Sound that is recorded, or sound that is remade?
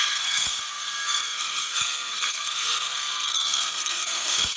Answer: remade